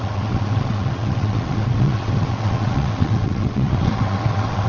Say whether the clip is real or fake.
fake